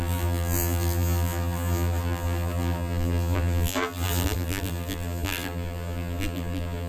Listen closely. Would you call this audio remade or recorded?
remade